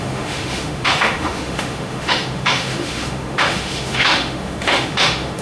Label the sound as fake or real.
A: fake